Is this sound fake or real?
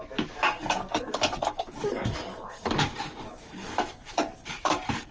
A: fake